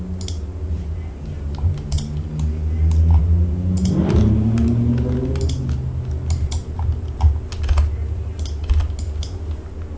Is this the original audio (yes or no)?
yes